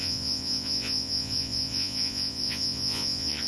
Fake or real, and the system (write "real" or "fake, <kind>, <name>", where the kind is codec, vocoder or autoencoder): fake, vocoder, Vocos